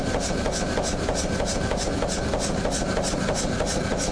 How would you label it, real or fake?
real